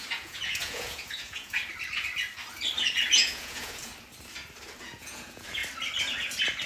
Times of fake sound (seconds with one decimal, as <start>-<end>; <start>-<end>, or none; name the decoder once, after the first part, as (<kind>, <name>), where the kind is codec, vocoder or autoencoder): 0.0-1.6 (vocoder, Vocos); 3.1-3.9; 4.8-5.6